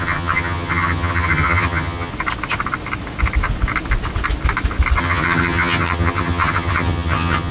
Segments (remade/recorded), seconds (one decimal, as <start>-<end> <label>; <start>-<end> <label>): 0.0-2.1 remade; 2.1-5.0 recorded; 5.0-7.5 remade